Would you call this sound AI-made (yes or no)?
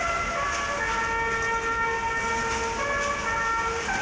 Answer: no